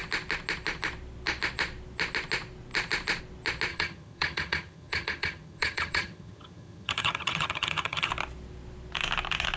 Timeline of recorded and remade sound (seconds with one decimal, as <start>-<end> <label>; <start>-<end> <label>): 0.0-3.7 recorded; 3.7-8.1 remade; 8.1-9.6 recorded